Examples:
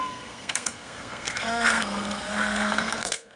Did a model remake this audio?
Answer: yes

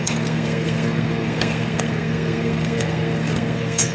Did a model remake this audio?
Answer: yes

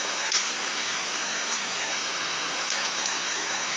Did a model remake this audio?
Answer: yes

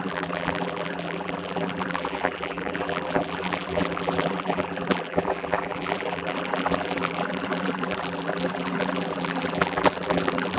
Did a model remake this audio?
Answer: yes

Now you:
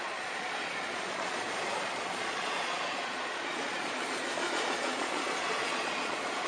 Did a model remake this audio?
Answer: yes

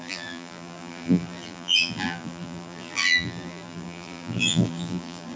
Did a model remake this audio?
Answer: yes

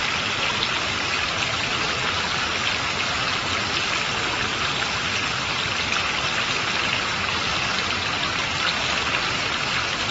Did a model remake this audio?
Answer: no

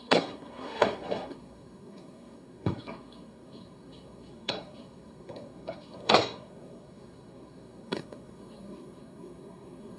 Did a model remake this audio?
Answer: yes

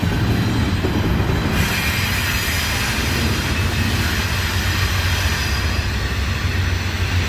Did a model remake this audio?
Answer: no